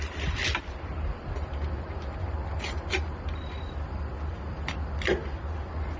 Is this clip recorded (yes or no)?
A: yes